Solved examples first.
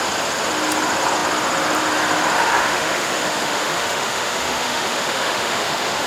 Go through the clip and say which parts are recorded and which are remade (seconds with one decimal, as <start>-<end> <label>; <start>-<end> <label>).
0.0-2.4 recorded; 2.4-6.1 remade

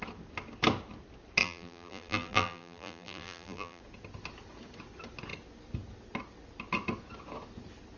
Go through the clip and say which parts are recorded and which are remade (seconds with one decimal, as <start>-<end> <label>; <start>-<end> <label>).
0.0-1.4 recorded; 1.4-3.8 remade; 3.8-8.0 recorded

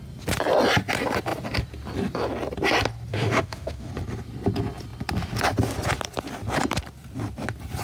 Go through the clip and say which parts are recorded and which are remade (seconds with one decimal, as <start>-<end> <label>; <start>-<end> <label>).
0.0-3.1 recorded; 3.1-3.9 remade; 3.9-7.8 recorded

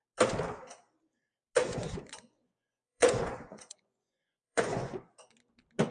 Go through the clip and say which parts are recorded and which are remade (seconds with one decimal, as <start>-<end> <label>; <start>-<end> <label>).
0.0-1.6 recorded; 1.6-5.0 remade; 5.0-5.9 recorded

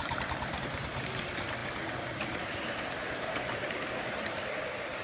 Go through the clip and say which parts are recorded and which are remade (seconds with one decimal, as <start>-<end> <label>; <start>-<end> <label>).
0.0-5.0 recorded

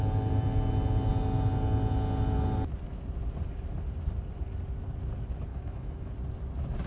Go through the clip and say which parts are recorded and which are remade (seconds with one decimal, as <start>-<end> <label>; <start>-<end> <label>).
0.0-5.5 recorded; 5.5-6.1 remade; 6.1-6.9 recorded

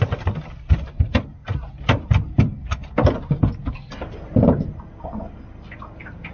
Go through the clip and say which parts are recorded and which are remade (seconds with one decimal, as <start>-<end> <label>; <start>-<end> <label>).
0.0-6.3 recorded

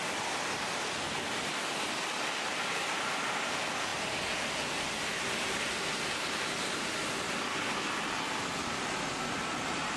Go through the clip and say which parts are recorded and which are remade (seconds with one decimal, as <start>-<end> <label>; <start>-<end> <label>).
0.0-10.0 recorded